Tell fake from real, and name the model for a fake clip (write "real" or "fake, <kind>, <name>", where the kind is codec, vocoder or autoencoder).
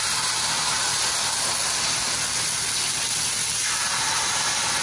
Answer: real